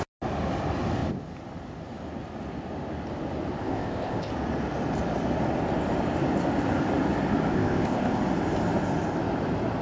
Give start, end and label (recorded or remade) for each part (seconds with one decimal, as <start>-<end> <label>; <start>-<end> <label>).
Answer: 0.0-3.6 recorded; 3.6-4.3 remade; 4.3-7.5 recorded; 7.5-8.2 remade; 8.2-9.8 recorded